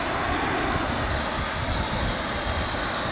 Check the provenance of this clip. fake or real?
real